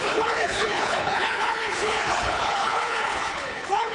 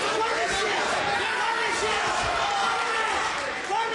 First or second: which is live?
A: second